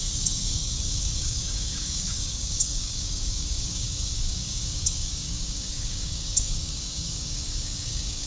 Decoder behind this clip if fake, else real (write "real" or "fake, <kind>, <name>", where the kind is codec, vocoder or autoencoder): fake, codec, DAC